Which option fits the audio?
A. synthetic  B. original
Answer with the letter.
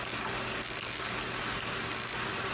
B